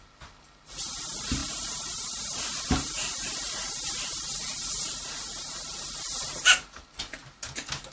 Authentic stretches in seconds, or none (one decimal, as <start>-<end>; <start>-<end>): 0.0-7.9